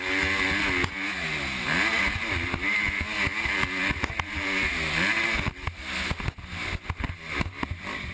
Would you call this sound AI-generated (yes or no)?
no